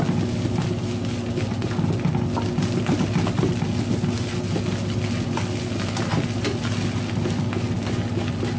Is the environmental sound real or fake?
real